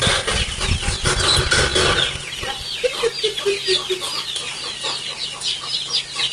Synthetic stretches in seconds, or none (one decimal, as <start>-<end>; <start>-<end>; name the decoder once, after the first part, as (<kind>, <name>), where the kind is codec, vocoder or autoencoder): none